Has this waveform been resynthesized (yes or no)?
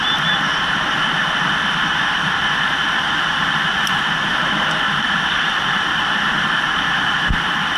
no